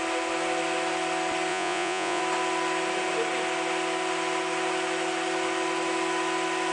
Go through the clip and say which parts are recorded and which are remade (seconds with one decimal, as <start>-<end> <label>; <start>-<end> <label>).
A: 0.0-1.5 recorded; 1.5-2.2 remade; 2.2-6.7 recorded

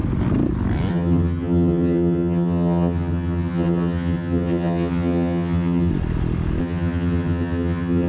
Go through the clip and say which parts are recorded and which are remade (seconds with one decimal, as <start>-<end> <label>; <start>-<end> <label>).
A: 0.0-0.9 recorded; 0.9-5.9 remade; 5.9-6.6 recorded; 6.6-8.1 remade

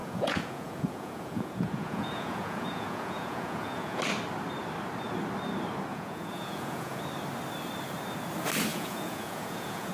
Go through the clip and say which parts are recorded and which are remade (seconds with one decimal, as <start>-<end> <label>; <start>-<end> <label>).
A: 0.0-4.0 remade; 4.0-5.9 recorded; 5.9-7.0 remade; 7.0-8.7 recorded; 8.7-9.9 remade

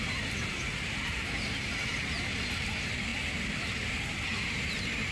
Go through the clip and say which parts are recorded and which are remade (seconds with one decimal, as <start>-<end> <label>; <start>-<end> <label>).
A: 0.0-5.1 recorded

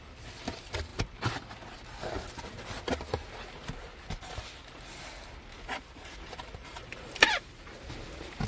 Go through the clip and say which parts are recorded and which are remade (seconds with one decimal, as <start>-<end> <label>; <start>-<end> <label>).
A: 0.0-6.6 recorded; 6.6-7.7 remade; 7.7-8.5 recorded

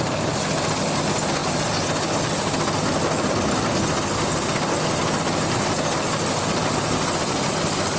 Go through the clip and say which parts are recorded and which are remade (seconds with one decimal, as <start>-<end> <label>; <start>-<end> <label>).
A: 0.0-8.0 recorded